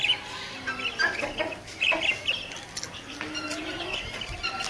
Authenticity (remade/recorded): recorded